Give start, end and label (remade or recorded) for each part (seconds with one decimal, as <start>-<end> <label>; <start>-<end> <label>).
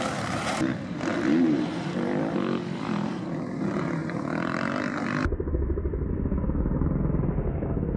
0.0-8.0 recorded